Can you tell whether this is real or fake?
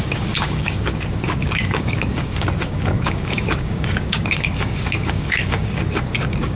fake